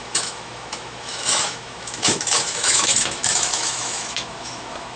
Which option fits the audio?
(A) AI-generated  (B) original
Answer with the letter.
A